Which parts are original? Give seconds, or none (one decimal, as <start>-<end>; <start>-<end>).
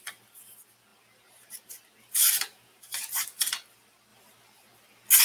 0.0-0.9; 3.0-5.2